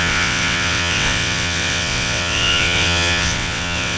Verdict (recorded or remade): remade